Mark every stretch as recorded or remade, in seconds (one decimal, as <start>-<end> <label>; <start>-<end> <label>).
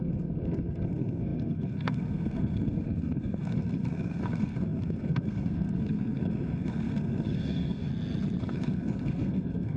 0.0-7.9 remade; 7.9-8.4 recorded; 8.4-9.8 remade